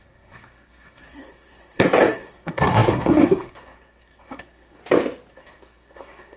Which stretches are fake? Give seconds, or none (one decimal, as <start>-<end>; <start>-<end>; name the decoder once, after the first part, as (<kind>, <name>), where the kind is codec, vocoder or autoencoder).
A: 0.0-4.8 (codec, SNAC); 5.3-6.4